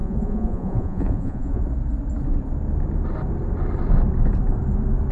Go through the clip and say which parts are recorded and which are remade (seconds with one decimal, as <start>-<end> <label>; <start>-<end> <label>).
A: 0.0-1.6 remade; 1.6-5.1 recorded